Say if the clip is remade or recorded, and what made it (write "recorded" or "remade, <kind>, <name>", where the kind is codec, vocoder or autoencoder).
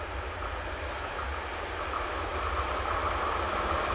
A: recorded